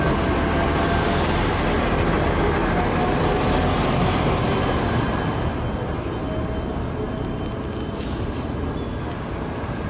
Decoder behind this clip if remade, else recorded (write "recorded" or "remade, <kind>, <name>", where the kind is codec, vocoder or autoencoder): recorded